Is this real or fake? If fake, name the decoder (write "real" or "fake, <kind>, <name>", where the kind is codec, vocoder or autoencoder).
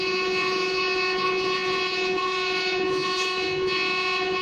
fake, vocoder, Vocos